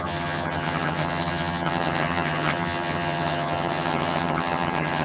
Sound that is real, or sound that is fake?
fake